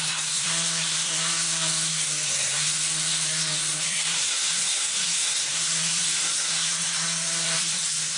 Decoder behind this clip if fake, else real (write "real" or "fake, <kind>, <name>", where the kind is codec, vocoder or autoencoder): fake, codec, SNAC